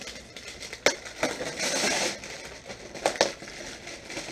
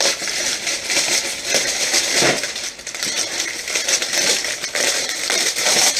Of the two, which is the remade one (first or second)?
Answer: second